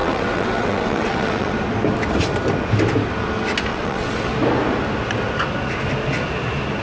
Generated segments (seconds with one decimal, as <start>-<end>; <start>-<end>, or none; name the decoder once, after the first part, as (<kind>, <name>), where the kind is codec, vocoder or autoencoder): 0.0-1.5 (vocoder, WaveNeXt); 3.7-4.3